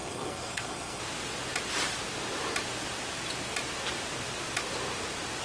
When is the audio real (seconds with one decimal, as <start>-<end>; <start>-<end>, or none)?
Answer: 1.0-5.4